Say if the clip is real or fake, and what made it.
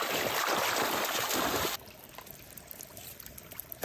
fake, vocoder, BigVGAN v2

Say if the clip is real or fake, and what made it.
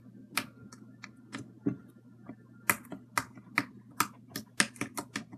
real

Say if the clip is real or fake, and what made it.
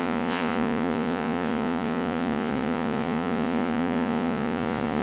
fake, vocoder, Vocos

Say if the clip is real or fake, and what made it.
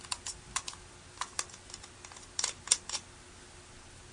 real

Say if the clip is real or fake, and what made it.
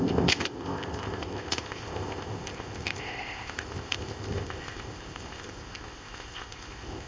fake, codec, ZipCodec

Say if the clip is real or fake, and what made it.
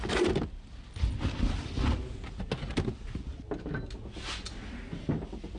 real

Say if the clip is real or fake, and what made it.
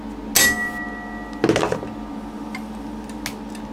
real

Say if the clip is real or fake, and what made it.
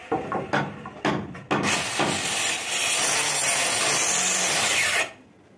real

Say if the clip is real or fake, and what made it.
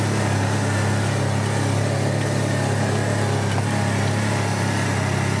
real